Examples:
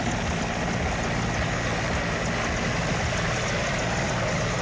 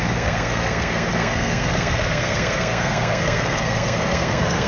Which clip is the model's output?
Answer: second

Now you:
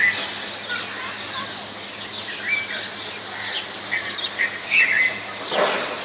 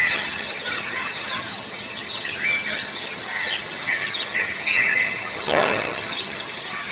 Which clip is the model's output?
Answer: second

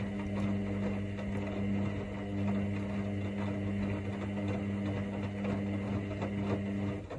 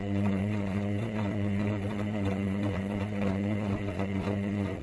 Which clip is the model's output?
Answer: second